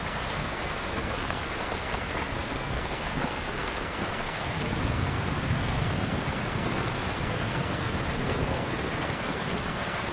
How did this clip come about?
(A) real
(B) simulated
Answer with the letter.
B